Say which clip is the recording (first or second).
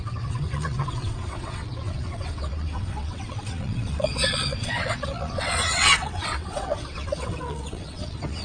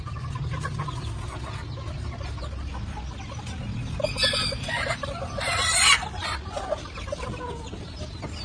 second